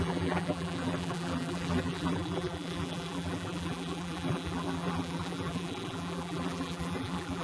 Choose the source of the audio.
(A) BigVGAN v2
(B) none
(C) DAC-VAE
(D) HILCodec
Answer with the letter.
A